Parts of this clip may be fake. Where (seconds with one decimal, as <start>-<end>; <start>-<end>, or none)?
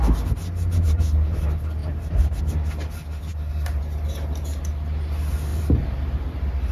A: 1.8-2.4; 5.5-6.2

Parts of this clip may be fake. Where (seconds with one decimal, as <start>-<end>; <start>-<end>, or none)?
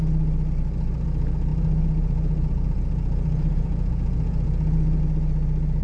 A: 1.5-5.0